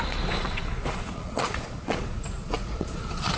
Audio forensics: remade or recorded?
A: remade